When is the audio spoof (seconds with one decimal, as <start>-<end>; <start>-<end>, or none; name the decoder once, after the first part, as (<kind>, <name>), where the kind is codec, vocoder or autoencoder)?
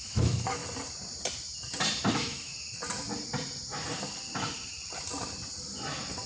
0.0-0.6 (autoencoder, DAC-VAE); 2.1-2.5